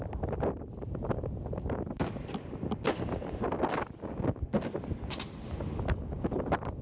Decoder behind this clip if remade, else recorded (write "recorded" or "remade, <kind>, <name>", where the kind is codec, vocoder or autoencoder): recorded